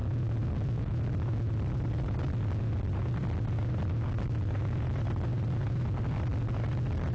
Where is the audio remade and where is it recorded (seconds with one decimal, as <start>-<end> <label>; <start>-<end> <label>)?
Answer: 0.0-7.1 recorded